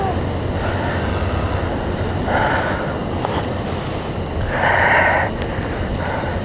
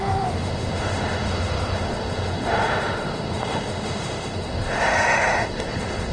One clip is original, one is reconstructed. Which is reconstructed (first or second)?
second